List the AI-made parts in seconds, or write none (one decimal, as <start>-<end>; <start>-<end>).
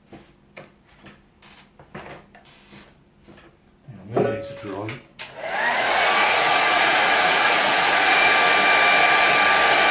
5.1-8.3